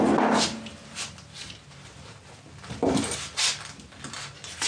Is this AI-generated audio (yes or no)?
no